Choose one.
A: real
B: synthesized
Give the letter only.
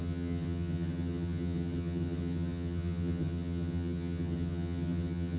B